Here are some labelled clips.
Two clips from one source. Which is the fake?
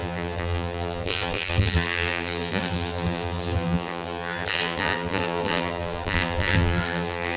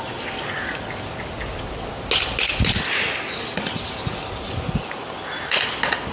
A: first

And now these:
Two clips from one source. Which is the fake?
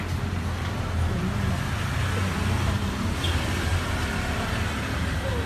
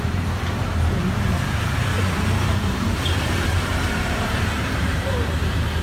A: second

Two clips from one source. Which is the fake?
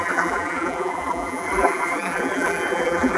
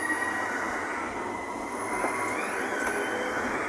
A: first